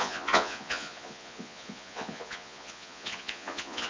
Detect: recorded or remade remade